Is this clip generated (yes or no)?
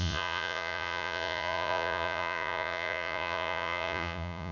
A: yes